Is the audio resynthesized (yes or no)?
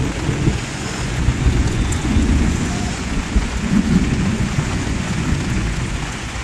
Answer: yes